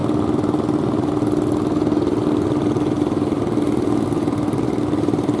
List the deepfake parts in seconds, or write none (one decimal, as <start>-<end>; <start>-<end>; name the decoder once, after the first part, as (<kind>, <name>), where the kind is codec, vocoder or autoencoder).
none